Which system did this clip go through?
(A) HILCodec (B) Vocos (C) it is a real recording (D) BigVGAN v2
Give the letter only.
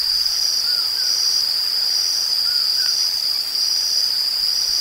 D